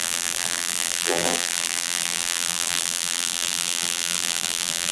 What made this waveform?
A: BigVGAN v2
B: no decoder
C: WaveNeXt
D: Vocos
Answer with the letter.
A